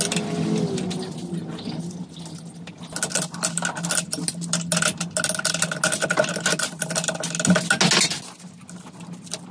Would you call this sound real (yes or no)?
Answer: yes